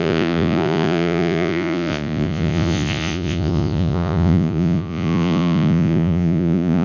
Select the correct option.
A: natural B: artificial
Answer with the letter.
B